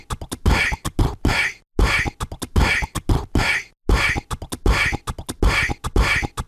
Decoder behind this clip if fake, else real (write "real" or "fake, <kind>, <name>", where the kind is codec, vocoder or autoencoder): real